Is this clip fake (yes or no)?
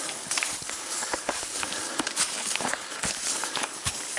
yes